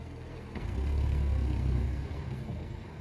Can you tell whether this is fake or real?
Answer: fake